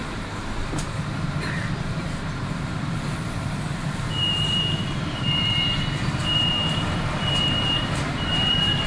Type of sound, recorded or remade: remade